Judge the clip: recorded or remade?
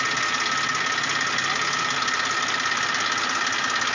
recorded